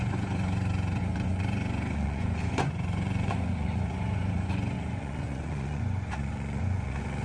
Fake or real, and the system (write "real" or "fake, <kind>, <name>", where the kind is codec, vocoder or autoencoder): fake, vocoder, Vocos